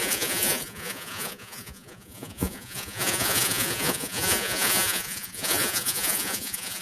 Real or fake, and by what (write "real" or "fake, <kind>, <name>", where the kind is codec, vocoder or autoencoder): fake, vocoder, Vocos